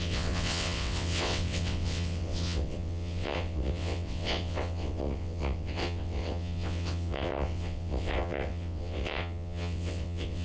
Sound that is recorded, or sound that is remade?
remade